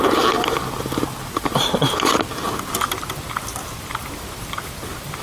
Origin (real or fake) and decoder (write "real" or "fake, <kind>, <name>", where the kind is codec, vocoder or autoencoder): real